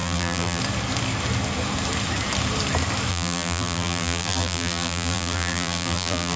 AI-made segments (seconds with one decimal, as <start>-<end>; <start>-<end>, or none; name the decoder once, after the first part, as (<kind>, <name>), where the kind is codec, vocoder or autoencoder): 0.0-0.6 (vocoder, BigVGAN v2); 3.1-6.4